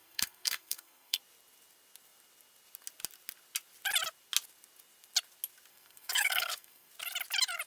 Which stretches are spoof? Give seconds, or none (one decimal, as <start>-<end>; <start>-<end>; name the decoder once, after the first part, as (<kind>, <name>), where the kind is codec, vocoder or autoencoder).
0.0-1.2 (codec, SNAC); 5.7-6.9